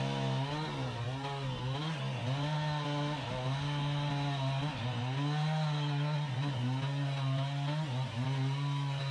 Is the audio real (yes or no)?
yes